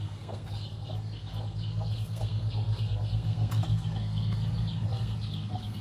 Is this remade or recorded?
remade